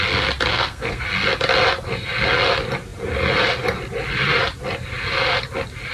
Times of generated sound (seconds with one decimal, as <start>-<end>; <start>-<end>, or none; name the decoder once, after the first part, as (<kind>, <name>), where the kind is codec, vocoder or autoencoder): 0.5-1.0 (codec, SNAC)